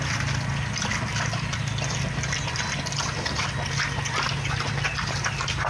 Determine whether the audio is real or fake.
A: real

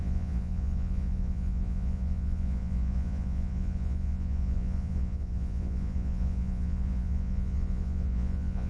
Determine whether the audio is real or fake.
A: fake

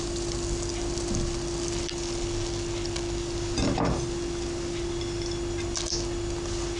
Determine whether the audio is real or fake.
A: real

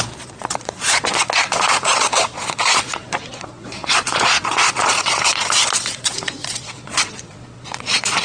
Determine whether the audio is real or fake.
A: fake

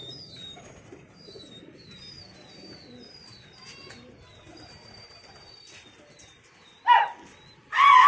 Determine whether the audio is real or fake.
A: real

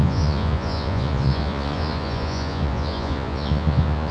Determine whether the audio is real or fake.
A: fake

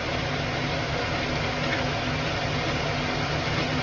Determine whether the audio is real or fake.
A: real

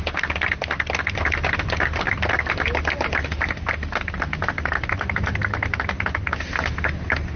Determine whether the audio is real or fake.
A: real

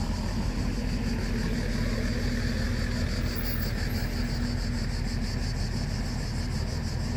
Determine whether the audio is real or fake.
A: real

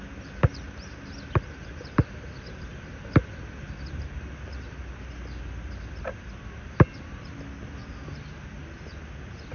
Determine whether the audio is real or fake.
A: real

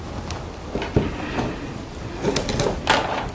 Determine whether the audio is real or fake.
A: real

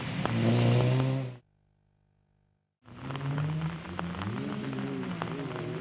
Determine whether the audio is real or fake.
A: real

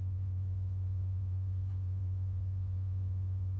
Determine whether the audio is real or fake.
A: fake